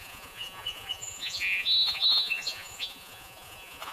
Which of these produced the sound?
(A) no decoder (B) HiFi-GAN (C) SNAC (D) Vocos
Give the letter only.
D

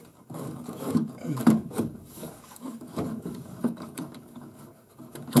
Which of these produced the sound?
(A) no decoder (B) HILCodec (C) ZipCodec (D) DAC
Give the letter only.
D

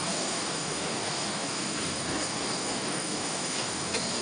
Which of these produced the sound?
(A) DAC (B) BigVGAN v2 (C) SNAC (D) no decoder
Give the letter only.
A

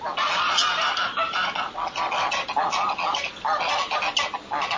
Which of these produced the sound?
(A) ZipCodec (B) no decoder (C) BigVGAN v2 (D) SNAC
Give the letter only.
B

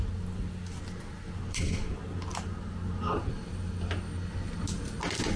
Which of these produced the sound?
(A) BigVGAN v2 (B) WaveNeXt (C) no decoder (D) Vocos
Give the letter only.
C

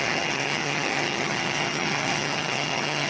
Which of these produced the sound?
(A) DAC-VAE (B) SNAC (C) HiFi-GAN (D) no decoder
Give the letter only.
C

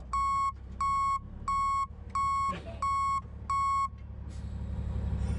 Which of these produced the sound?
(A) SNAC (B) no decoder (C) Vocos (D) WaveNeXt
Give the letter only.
B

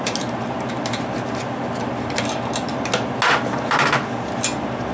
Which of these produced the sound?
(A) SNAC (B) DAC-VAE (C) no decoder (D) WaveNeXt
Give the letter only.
C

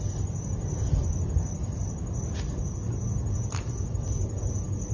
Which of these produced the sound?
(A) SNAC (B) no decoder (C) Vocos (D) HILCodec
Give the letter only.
B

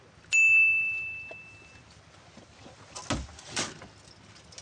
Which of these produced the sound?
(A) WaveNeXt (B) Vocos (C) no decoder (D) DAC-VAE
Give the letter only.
C